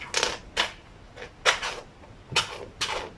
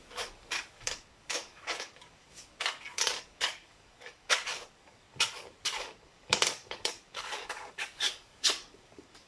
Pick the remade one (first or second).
second